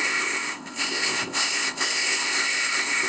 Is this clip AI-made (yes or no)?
yes